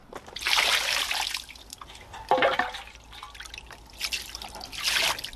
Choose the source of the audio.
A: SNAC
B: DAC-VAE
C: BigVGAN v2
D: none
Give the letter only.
D